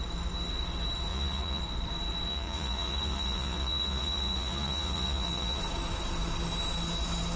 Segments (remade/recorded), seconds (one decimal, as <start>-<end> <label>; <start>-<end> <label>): 0.0-1.1 recorded; 1.1-1.6 remade; 1.6-2.3 recorded; 2.3-5.6 remade; 5.6-7.4 recorded